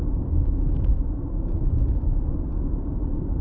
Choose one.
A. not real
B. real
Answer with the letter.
B